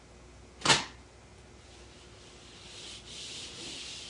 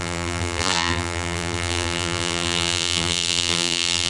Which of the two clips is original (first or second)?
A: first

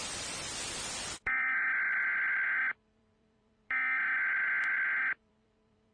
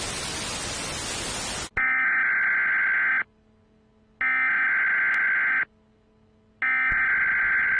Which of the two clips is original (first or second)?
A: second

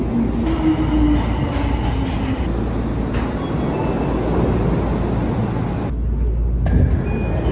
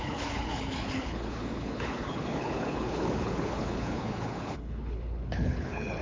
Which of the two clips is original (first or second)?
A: first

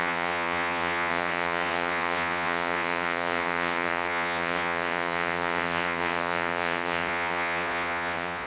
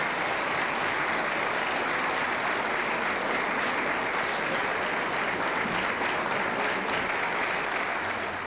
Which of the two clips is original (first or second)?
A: second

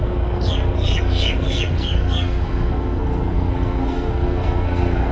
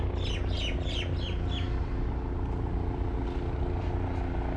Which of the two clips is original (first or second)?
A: second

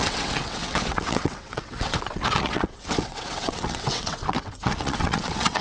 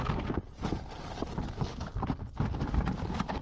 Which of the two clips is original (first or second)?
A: second